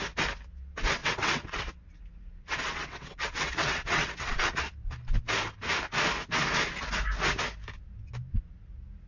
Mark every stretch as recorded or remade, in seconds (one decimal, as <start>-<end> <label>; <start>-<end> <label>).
0.0-1.0 recorded; 1.0-1.8 remade; 1.8-2.4 recorded; 2.4-4.6 remade; 4.6-9.1 recorded